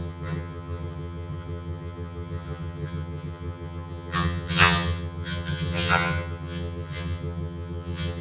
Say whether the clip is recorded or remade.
remade